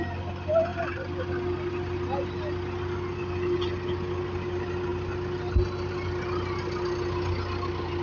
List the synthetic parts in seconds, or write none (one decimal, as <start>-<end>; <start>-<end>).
0.7-1.3